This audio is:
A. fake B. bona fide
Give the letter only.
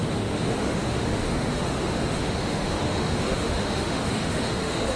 A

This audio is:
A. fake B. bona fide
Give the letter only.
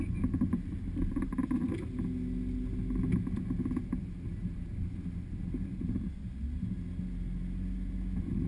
B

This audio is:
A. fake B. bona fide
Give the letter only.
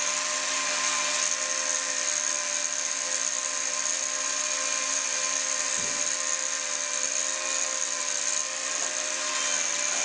B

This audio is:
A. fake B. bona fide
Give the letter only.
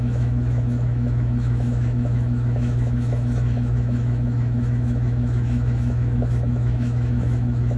A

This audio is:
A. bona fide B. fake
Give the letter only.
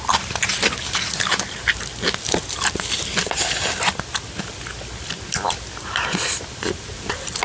A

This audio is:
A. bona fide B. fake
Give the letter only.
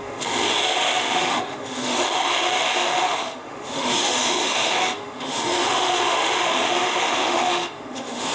B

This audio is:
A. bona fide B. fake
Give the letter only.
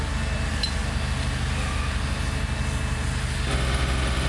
A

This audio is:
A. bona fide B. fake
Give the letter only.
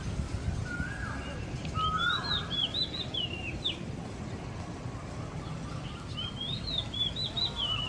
A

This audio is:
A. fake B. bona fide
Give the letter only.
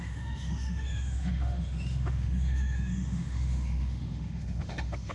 A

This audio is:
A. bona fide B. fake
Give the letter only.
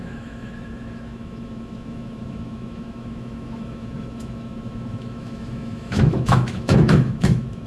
B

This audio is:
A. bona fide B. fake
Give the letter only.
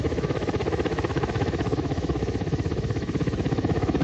B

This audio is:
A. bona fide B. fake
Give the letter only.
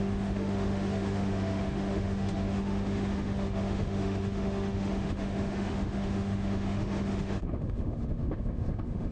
B